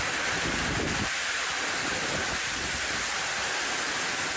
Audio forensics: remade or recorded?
recorded